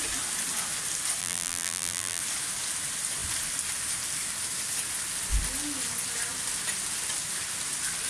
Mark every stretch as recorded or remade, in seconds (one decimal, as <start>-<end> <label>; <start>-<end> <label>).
0.0-1.2 recorded; 1.2-2.2 remade; 2.2-8.1 recorded